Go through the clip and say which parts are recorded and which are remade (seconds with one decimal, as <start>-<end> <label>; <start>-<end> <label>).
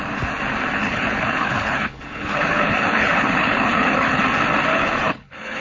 0.0-0.8 recorded; 0.8-4.2 remade; 4.2-4.7 recorded; 4.7-5.6 remade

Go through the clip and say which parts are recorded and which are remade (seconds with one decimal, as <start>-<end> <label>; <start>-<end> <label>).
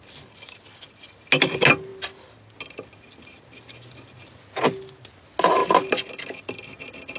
0.0-7.2 recorded